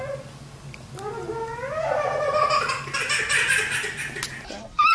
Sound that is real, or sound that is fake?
real